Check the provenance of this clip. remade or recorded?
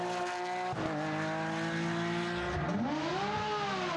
recorded